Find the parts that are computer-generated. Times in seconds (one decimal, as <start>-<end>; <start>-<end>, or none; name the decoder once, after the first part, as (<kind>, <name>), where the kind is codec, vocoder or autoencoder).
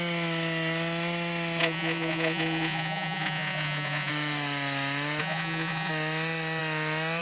1.6-4.1 (vocoder, Vocos); 5.2-5.9